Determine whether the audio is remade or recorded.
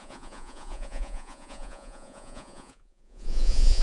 remade